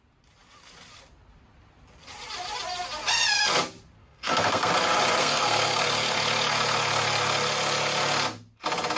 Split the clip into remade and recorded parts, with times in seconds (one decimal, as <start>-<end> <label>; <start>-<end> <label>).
0.0-4.0 recorded; 4.0-4.7 remade; 4.7-5.2 recorded; 5.2-5.8 remade; 5.8-9.0 recorded